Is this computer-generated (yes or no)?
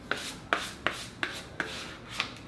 no